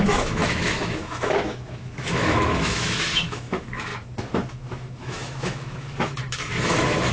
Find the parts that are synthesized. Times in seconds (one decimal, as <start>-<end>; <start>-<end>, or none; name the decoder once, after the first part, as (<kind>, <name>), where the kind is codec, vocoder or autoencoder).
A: 0.0-7.1 (autoencoder, DAC-VAE)